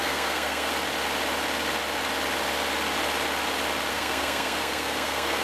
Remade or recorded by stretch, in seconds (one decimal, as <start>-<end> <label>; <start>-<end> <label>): 0.0-0.7 remade; 0.7-3.9 recorded; 3.9-5.4 remade